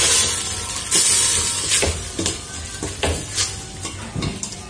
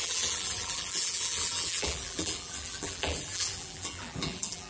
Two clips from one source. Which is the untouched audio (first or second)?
first